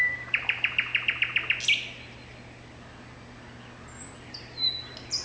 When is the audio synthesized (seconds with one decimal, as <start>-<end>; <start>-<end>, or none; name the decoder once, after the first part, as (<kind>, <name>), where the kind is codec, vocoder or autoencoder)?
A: 0.0-0.9 (vocoder, BigVGAN v2); 4.0-5.2